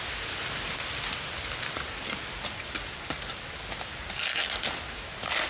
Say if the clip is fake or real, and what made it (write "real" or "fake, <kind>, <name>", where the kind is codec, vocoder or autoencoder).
real